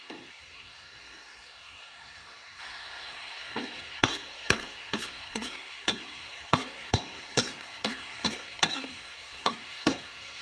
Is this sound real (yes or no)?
no